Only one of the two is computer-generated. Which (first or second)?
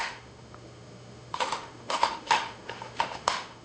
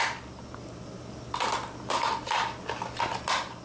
first